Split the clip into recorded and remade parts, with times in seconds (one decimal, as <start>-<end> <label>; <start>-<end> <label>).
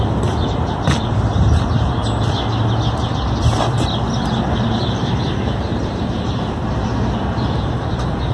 0.0-2.0 remade; 2.0-4.5 recorded; 4.5-8.3 remade